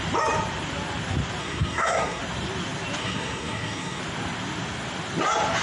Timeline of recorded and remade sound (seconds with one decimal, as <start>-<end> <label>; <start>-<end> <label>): 0.0-1.4 recorded; 1.4-2.2 remade; 2.2-3.0 recorded; 3.0-4.0 remade; 4.0-5.6 recorded